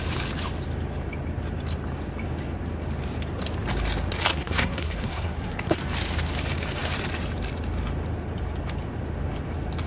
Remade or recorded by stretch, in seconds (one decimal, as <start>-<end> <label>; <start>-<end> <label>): 0.0-4.3 recorded; 4.3-5.8 remade; 5.8-9.9 recorded